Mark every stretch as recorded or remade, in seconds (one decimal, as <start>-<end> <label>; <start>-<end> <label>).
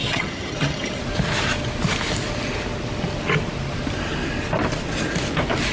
0.0-1.0 remade; 1.0-5.7 recorded